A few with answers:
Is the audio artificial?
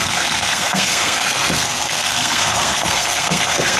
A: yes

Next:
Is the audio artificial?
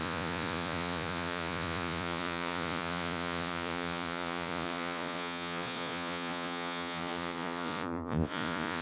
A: yes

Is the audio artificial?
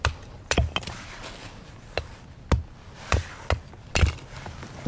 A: no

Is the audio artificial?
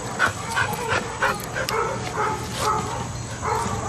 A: no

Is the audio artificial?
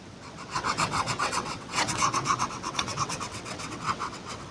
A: yes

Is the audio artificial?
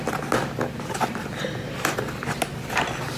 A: no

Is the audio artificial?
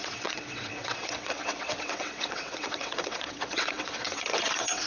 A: yes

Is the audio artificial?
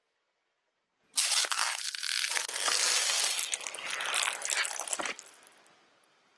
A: no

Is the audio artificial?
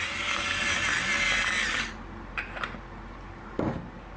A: no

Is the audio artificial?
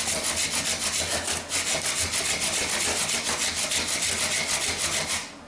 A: no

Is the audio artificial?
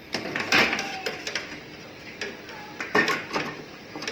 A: no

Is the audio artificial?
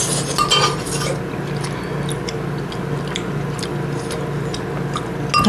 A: no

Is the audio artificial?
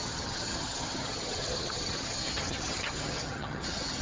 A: yes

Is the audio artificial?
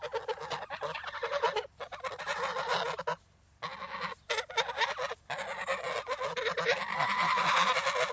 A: no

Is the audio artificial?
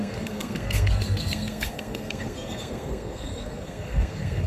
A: yes